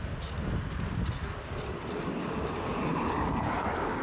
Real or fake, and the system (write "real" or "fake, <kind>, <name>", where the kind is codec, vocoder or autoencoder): real